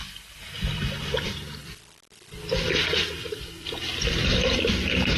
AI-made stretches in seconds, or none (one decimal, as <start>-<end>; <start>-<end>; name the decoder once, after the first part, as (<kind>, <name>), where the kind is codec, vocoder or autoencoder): 0.0-1.6 (vocoder, BigVGAN v2); 4.0-5.2